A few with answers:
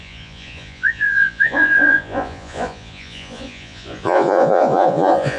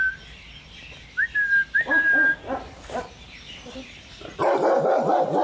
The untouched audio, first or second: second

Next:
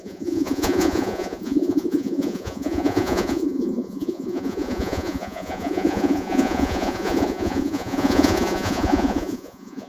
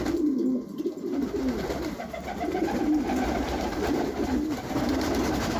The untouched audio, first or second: second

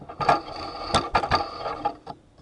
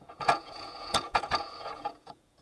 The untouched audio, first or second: first